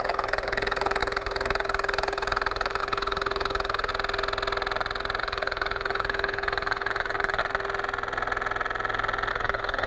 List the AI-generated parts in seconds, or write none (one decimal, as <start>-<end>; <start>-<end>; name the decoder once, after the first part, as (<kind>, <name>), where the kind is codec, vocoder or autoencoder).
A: 0.0-3.9 (codec, HILCodec); 5.2-7.4; 9.3-9.9